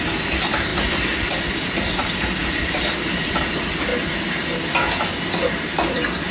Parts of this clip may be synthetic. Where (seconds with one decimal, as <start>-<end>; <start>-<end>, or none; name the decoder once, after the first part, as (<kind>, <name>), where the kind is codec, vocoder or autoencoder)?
none